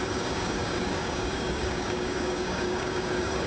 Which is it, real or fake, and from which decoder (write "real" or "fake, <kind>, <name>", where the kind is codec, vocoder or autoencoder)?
fake, codec, DAC